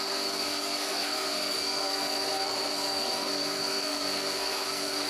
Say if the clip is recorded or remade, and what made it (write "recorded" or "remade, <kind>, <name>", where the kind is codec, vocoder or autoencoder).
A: remade, codec, SNAC